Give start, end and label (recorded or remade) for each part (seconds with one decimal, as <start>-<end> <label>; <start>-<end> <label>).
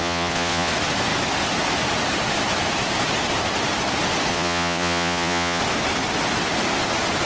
0.0-0.7 remade; 0.7-4.3 recorded; 4.3-5.6 remade; 5.6-7.3 recorded